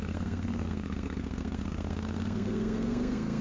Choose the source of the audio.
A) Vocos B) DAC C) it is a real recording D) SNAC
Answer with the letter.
D